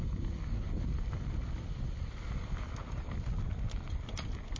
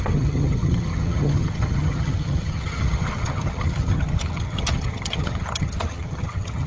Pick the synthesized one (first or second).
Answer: second